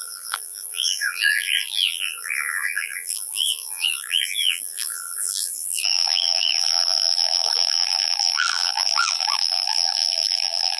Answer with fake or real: fake